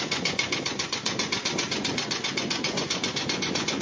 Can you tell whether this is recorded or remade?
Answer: remade